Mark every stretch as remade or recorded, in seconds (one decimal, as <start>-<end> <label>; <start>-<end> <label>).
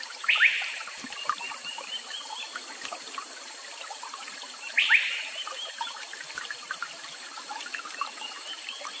0.0-1.4 remade; 1.4-4.0 recorded; 4.0-9.0 remade